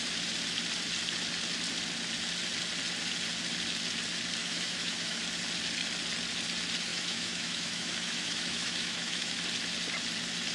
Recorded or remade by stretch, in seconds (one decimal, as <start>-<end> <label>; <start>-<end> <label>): 0.0-4.4 recorded; 4.4-5.2 remade; 5.2-6.9 recorded; 6.9-9.4 remade; 9.4-10.5 recorded